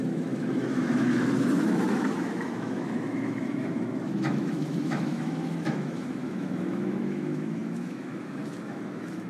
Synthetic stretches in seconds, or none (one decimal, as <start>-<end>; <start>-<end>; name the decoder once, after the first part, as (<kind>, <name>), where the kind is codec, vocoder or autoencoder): 0.0-9.3 (autoencoder, DAC-VAE)